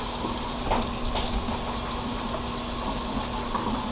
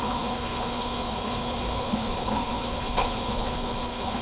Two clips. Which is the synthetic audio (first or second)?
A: second